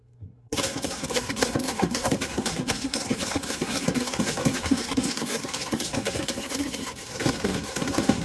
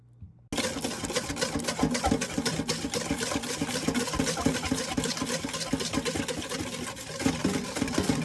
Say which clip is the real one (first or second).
second